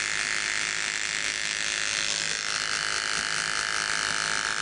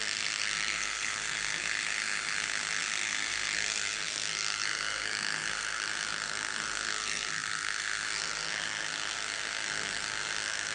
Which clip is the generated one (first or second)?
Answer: second